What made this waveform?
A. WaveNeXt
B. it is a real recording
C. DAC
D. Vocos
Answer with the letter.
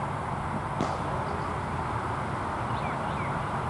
B